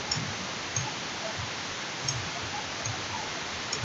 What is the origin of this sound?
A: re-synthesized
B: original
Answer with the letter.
B